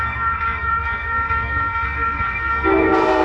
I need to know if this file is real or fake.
fake